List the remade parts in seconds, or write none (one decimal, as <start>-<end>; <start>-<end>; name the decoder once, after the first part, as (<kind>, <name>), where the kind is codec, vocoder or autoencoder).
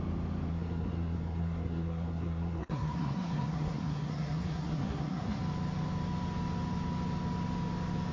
0.5-5.4 (codec, SNAC)